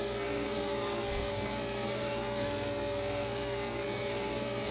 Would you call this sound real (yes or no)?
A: no